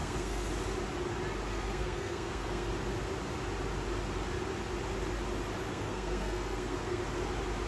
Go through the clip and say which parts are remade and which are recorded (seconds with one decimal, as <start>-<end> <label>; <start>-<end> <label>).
0.0-0.5 remade; 0.5-1.5 recorded; 1.5-2.7 remade; 2.7-5.7 recorded; 5.7-7.0 remade; 7.0-7.7 recorded